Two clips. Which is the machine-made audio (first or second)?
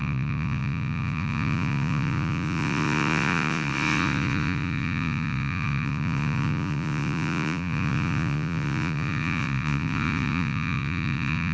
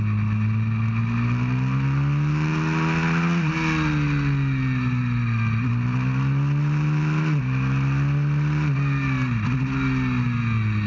first